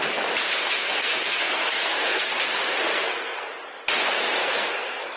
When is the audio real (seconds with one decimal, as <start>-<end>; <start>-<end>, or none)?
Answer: 0.0-0.8; 2.3-2.9; 3.5-4.4